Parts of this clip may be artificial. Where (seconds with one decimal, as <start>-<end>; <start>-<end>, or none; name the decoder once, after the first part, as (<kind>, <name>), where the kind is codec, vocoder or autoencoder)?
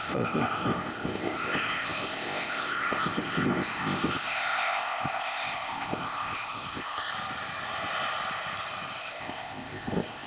0.0-7.1 (codec, ZipCodec); 9.0-10.3